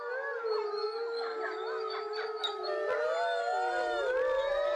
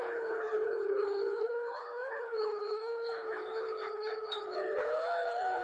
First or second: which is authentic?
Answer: first